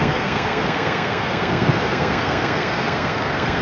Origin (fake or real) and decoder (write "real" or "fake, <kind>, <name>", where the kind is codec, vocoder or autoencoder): fake, codec, SNAC